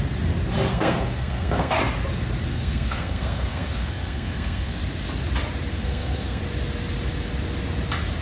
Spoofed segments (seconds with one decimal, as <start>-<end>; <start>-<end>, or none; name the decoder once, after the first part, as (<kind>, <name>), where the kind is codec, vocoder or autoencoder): 0.7-1.8 (codec, SNAC); 2.5-4.8; 5.7-6.4